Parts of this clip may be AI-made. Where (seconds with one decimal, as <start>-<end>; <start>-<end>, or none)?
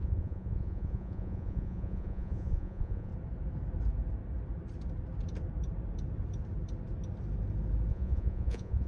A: 0.0-3.1; 7.9-8.9